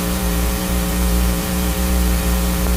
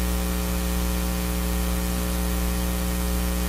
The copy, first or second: first